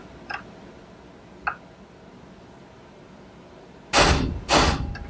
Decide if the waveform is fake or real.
real